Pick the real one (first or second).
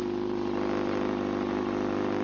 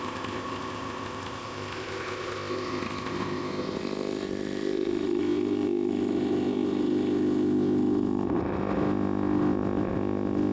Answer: first